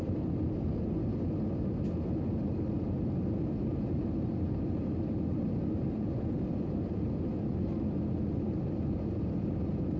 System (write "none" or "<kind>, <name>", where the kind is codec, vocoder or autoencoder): none